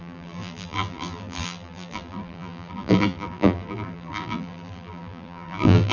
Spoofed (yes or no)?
yes